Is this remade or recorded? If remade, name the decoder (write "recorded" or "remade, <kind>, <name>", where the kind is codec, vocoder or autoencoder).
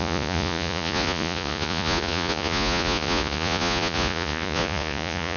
remade, vocoder, Vocos